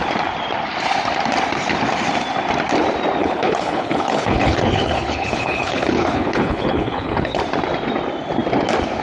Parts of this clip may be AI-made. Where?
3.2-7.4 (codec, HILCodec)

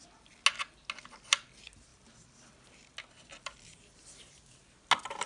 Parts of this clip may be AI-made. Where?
none

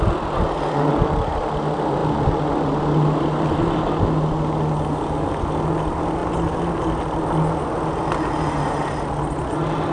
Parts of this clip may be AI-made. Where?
none

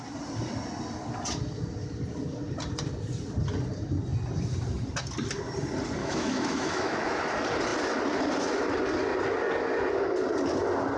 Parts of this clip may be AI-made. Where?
6.0-7.2 (autoencoder, DAC-VAE)

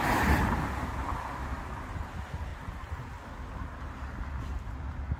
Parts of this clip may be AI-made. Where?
2.5-3.1 (vocoder, BigVGAN v2)

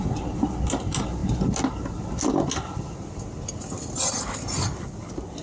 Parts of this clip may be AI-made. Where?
none